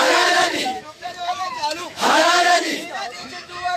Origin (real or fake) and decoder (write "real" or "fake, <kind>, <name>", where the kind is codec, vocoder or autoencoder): fake, autoencoder, DAC-VAE